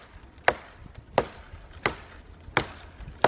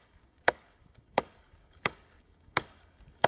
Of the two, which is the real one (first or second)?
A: first